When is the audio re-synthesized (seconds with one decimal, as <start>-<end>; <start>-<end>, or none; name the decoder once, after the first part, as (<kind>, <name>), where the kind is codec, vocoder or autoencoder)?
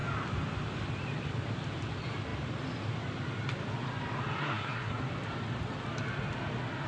4.4-5.0 (codec, SNAC)